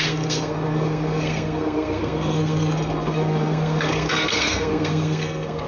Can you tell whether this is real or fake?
fake